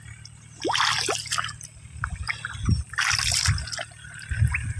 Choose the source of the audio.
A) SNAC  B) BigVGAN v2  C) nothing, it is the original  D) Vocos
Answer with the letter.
C